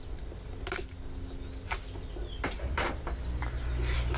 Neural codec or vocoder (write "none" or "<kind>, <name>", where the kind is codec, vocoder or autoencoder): none